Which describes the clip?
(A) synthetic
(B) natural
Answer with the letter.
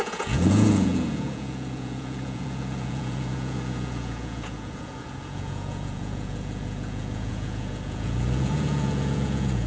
A